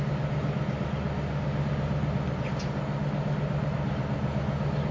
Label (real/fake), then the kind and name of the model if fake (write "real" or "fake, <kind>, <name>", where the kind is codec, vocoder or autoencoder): real